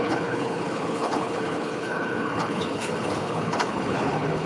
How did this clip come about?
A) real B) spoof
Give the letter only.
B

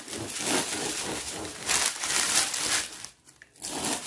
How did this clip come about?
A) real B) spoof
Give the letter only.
A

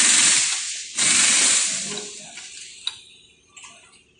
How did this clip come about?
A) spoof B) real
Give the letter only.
B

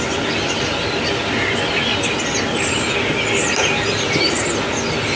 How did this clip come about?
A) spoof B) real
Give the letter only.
B